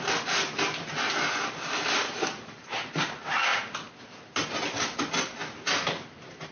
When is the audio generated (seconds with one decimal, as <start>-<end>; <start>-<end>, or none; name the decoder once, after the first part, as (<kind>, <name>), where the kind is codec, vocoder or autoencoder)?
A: none